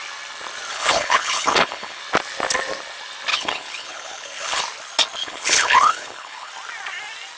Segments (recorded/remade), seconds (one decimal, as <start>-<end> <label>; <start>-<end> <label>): 0.0-0.7 recorded; 0.7-2.0 remade; 2.0-3.3 recorded; 3.3-4.6 remade; 4.6-5.2 recorded; 5.2-6.5 remade; 6.5-7.4 recorded